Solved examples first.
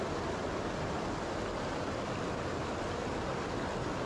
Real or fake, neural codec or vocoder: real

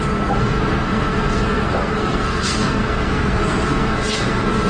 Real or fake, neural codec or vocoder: fake, codec, SNAC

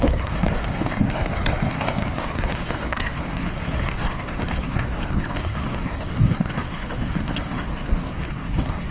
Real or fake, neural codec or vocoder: fake, codec, SNAC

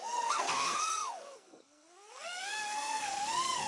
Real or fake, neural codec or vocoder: fake, codec, SNAC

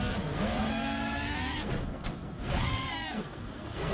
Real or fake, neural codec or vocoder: fake, codec, SNAC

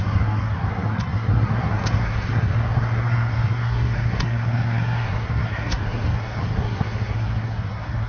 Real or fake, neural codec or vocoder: fake, codec, SNAC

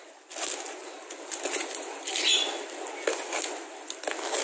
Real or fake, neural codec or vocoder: real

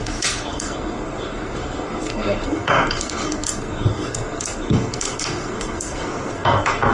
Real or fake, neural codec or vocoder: fake, codec, SNAC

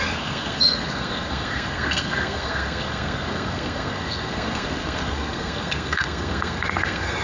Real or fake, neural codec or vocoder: fake, codec, SNAC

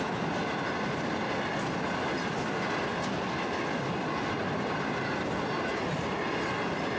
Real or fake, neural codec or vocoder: real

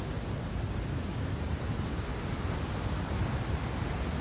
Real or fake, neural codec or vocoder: real